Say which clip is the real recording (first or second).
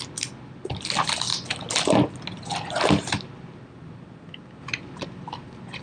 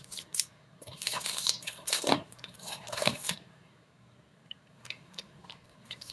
first